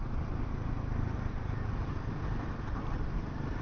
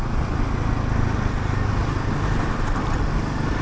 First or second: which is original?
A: second